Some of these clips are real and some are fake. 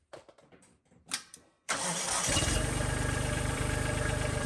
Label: fake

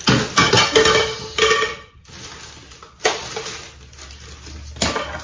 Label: real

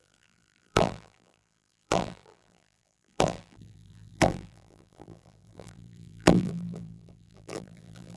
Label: fake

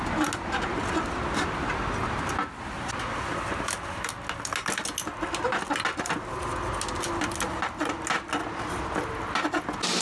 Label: real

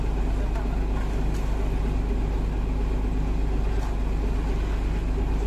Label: real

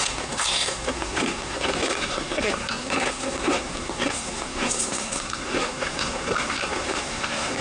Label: fake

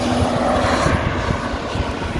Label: real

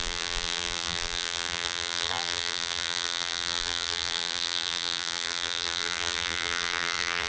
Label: fake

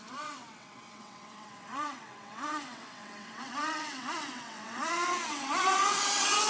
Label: fake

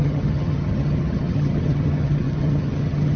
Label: fake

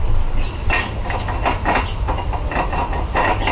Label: real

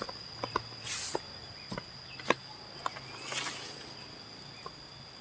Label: real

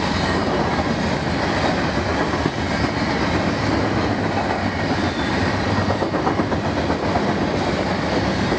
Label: real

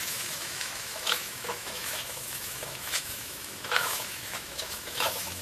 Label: fake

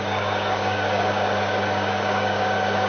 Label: fake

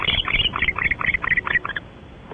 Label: real